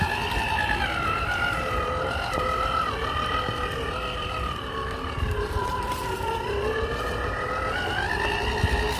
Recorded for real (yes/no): yes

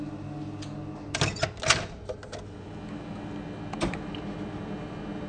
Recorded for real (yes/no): yes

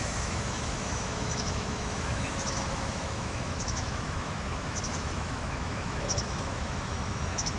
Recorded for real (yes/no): no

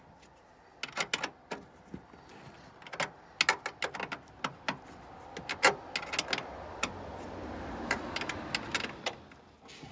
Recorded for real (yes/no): yes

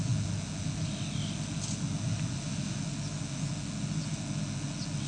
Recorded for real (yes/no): yes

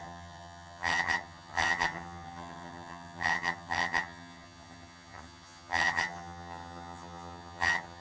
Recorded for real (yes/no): no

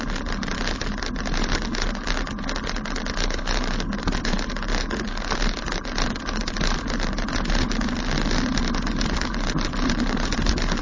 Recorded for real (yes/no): yes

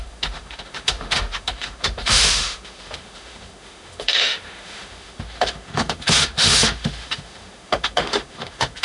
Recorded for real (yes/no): no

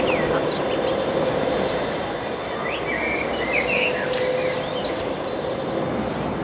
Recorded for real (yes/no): yes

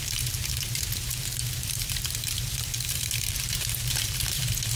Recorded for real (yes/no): no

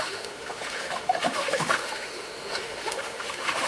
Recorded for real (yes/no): no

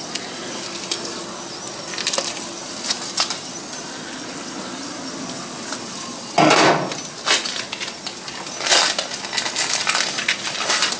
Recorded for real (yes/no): yes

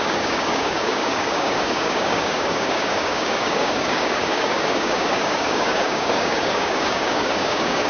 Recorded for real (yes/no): no